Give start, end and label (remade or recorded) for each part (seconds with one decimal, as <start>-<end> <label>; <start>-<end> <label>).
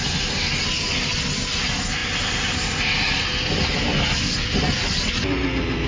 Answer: 0.0-5.9 recorded